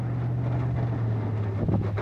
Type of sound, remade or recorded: recorded